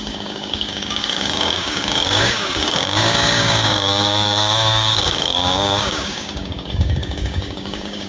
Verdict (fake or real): fake